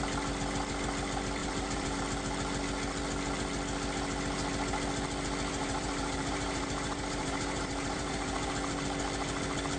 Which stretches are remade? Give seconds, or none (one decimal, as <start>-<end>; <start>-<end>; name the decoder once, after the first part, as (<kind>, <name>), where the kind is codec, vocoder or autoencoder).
1.4-2.0 (vocoder, BigVGAN v2); 5.6-8.5